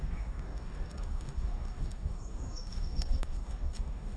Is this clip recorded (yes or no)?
no